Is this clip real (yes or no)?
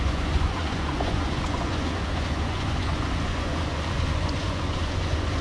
no